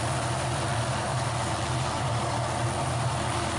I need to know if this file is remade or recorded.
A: recorded